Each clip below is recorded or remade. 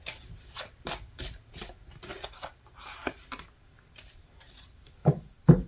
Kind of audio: recorded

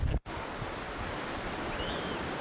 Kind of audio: recorded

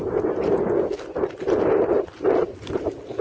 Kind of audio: recorded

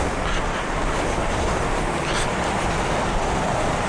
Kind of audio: recorded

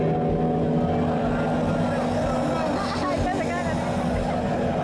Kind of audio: recorded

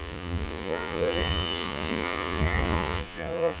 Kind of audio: remade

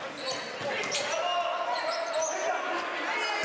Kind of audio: recorded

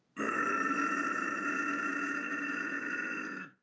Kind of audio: recorded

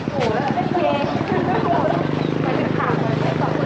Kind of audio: recorded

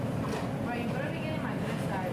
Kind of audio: recorded